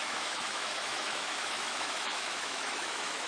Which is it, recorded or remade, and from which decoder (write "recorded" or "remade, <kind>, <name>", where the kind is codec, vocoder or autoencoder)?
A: remade, autoencoder, DAC-VAE